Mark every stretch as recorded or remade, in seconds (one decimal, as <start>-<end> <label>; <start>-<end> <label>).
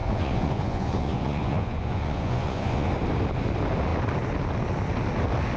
0.0-2.9 remade; 2.9-5.6 recorded